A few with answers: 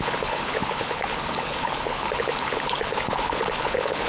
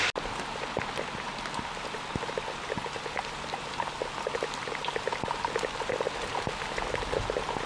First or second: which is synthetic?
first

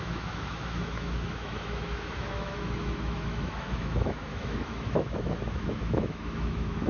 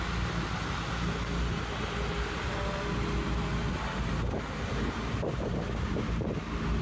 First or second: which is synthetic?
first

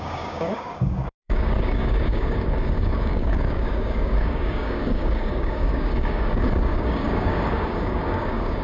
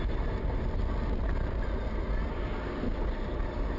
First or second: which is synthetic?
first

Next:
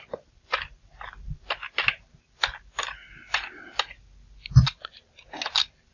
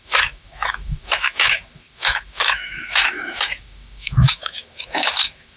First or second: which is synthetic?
second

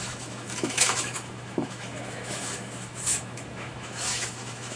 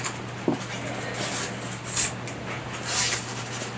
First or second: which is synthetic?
first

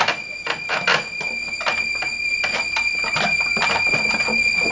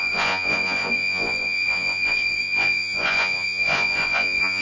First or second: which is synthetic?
second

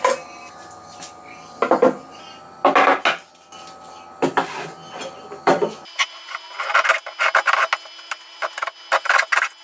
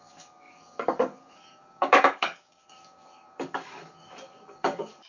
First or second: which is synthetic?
second